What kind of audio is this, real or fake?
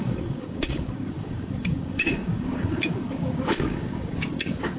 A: fake